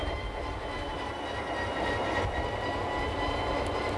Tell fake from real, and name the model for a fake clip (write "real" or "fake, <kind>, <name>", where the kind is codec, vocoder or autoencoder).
real